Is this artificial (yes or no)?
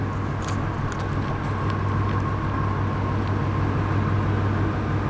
no